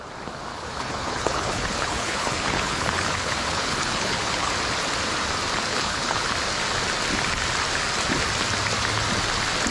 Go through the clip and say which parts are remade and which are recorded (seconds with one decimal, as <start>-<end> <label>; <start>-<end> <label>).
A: 0.0-0.5 recorded; 0.5-4.5 remade; 4.5-5.7 recorded; 5.7-6.3 remade; 6.3-9.7 recorded